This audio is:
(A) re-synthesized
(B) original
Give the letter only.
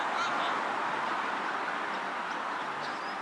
B